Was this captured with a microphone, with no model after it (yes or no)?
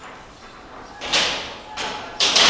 yes